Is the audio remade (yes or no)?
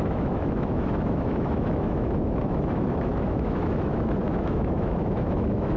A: yes